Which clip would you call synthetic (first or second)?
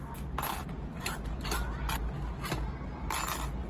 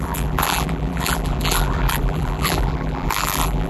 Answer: second